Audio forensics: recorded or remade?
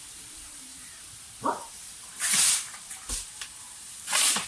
remade